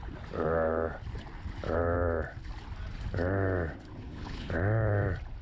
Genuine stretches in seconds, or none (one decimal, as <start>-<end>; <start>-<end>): 0.0-4.0; 4.5-5.4